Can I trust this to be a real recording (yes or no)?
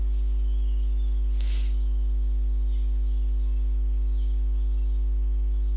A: yes